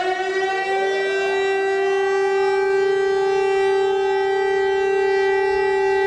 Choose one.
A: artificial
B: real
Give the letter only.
B